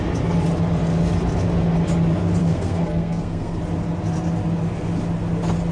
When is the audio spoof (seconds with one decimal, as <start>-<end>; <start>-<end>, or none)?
2.4-3.6